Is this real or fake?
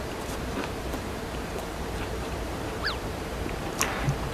fake